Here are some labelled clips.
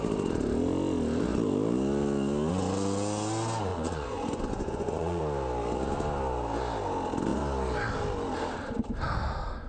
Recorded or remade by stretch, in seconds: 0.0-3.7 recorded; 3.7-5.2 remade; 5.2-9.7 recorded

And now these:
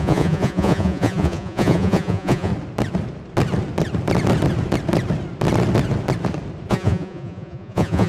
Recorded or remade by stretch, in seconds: 0.0-2.5 remade; 2.5-6.7 recorded; 6.7-8.1 remade